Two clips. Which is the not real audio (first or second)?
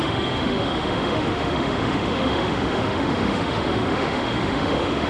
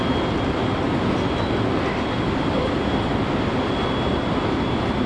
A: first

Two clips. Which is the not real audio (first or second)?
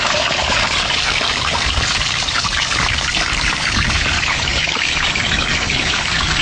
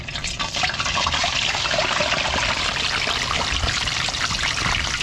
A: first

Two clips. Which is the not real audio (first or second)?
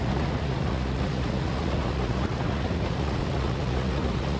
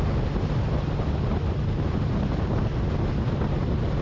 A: first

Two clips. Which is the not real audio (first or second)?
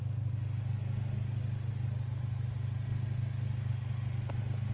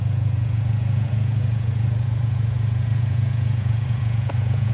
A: second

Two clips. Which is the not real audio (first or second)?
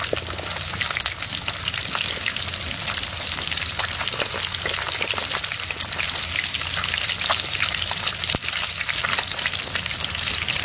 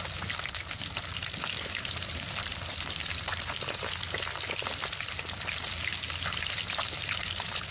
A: second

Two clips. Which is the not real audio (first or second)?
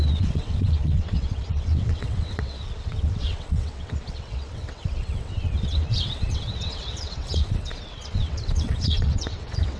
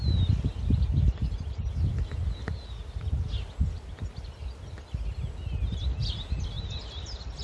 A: first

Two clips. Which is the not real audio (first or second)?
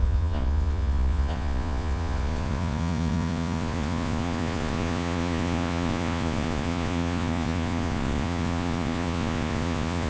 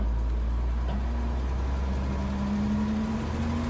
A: first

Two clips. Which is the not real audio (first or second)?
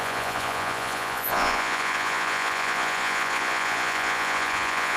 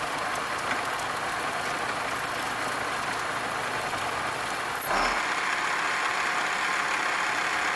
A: first